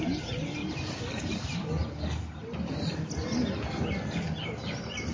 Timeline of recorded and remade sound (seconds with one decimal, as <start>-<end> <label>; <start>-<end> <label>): 0.0-0.6 recorded; 0.6-1.3 remade; 1.3-5.1 recorded

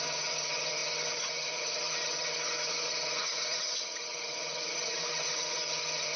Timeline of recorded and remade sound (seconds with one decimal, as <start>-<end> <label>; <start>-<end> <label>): 0.0-6.2 remade

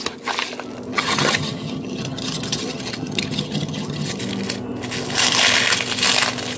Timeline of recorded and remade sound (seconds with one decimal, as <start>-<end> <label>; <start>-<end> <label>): 0.0-0.9 recorded; 0.9-4.2 remade; 4.2-6.6 recorded

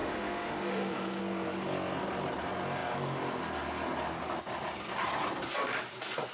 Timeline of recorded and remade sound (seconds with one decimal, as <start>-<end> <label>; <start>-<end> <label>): 0.0-1.2 remade; 1.2-6.3 recorded